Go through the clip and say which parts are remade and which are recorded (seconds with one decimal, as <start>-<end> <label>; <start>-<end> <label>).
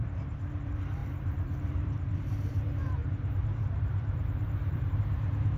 0.0-5.6 remade